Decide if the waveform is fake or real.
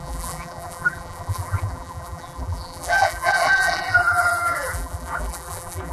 fake